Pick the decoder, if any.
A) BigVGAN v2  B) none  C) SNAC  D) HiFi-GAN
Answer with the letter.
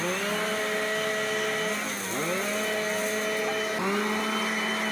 B